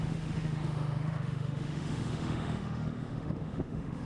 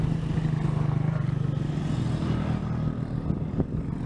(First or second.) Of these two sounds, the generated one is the first